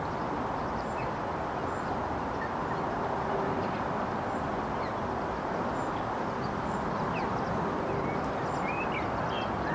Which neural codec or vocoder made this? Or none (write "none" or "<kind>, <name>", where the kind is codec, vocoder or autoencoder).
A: none